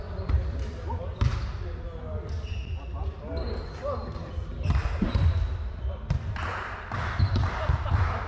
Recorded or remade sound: recorded